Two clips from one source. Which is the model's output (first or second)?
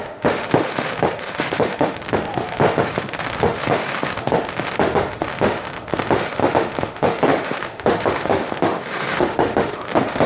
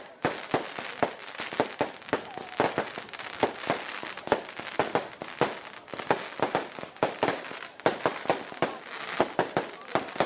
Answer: first